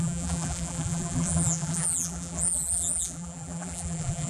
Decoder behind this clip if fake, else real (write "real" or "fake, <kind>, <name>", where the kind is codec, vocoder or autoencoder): fake, vocoder, BigVGAN v2